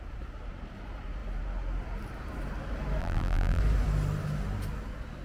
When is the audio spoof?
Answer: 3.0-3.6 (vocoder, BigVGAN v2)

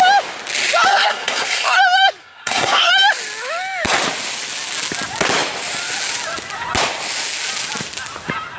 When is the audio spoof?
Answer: 0.9-1.8 (codec, SNAC); 2.2-2.9